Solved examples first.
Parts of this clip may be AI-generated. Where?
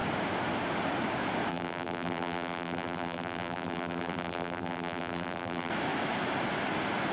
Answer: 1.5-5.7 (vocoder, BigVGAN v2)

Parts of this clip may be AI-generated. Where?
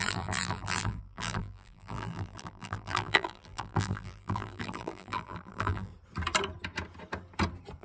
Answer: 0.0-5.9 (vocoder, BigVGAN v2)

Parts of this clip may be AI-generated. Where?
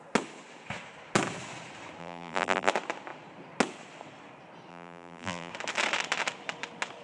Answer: 2.0-2.7 (vocoder, BigVGAN v2); 4.7-5.5